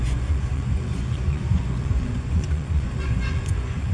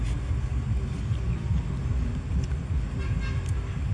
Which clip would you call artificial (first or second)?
first